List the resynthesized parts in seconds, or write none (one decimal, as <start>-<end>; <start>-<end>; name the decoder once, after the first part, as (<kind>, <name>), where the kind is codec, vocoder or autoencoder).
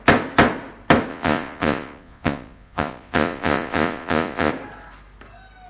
1.1-4.5 (vocoder, Vocos)